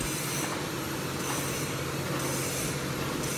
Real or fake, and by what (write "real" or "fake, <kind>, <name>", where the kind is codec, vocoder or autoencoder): real